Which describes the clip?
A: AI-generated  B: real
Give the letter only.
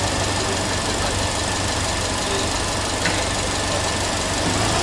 B